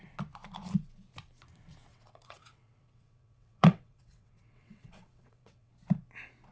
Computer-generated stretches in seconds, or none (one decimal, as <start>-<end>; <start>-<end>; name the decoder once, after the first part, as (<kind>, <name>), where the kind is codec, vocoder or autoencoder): 1.9-5.7 (vocoder, WaveNeXt)